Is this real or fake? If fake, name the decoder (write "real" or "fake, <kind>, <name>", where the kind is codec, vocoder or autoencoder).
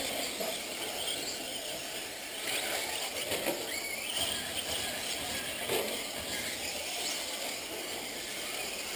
real